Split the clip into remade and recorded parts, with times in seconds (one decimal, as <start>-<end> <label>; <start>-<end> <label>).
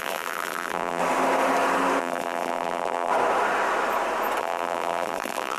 0.0-1.0 remade; 1.0-2.0 recorded; 2.0-3.1 remade; 3.1-4.4 recorded; 4.4-5.6 remade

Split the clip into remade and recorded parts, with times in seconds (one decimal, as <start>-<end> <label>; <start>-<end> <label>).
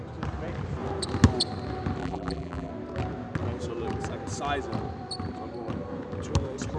0.0-2.0 recorded; 2.0-2.7 remade; 2.7-6.8 recorded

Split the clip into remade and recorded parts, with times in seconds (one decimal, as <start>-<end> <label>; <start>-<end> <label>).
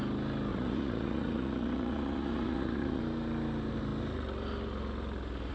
0.0-0.5 recorded; 0.5-3.0 remade; 3.0-5.5 recorded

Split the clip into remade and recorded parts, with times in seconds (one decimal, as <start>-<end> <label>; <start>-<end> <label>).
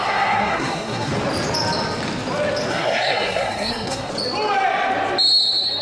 0.0-1.1 remade; 1.1-2.7 recorded; 2.7-4.1 remade; 4.1-5.8 recorded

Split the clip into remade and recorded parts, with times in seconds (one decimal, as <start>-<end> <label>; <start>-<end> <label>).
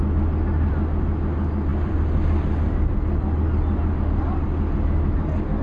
0.0-5.6 recorded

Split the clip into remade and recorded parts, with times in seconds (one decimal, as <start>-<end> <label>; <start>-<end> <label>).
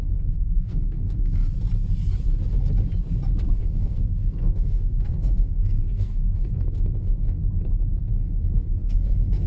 0.0-1.4 remade; 1.4-3.6 recorded; 3.6-7.4 remade; 7.4-8.1 recorded; 8.1-9.5 remade